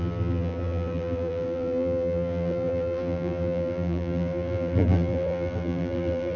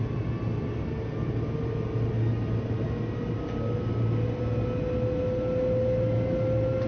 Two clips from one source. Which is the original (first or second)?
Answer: second